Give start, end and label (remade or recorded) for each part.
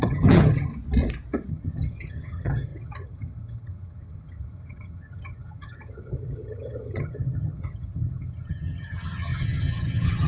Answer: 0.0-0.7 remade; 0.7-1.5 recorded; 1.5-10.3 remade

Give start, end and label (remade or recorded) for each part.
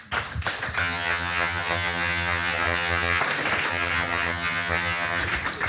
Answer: 0.0-0.8 recorded; 0.8-3.2 remade; 3.2-3.7 recorded; 3.7-5.2 remade; 5.2-5.7 recorded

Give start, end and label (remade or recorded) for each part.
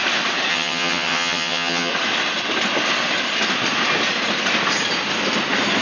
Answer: 0.0-0.5 recorded; 0.5-1.9 remade; 1.9-5.8 recorded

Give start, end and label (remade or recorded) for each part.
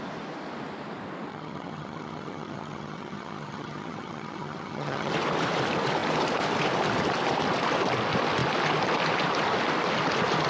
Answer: 0.0-1.3 recorded; 1.3-5.1 remade; 5.1-10.5 recorded